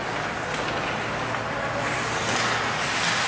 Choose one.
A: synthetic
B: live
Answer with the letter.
B